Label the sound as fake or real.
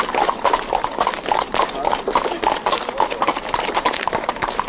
real